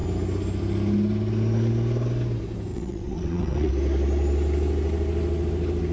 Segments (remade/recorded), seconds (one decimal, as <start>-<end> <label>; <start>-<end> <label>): 0.0-2.7 recorded; 2.7-3.7 remade; 3.7-5.9 recorded